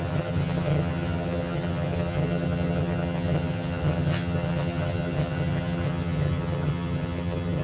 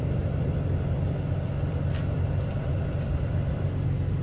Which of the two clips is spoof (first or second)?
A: first